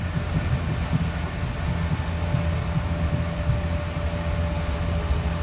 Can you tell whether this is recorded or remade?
recorded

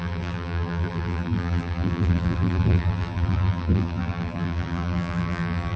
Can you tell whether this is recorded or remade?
remade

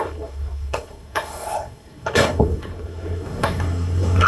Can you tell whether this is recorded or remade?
remade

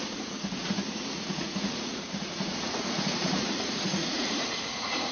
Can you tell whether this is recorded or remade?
remade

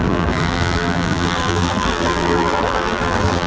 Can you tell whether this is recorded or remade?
remade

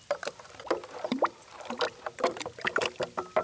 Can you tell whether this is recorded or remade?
recorded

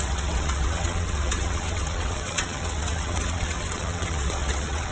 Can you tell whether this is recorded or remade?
remade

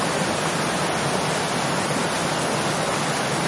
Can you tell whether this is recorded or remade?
recorded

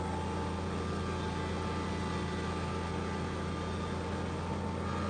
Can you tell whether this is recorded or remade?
recorded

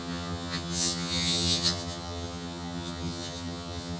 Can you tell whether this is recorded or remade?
remade